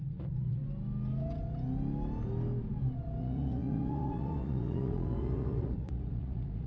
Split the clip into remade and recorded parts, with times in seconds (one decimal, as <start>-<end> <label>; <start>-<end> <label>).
0.0-0.6 remade; 0.6-3.2 recorded; 3.2-6.7 remade